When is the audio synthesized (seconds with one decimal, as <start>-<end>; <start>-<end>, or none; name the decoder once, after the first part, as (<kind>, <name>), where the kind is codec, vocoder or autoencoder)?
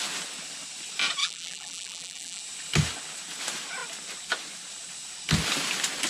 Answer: 1.2-2.4 (vocoder, BigVGAN v2)